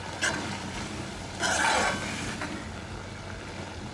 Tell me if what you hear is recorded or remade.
recorded